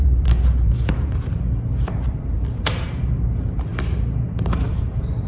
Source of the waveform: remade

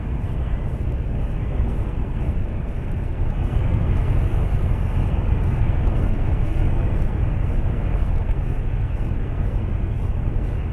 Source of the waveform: remade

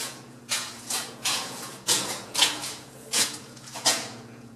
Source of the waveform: remade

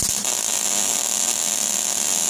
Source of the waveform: recorded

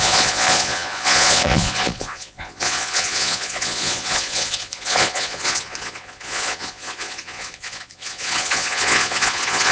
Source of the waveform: remade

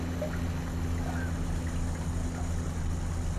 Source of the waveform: recorded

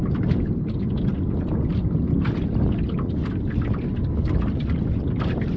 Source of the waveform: recorded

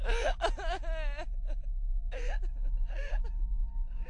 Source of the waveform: recorded